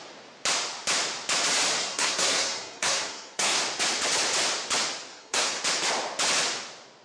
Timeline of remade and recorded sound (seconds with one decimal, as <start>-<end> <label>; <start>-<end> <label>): 0.0-1.8 recorded; 1.8-3.6 remade; 3.6-5.1 recorded; 5.1-5.6 remade; 5.6-7.0 recorded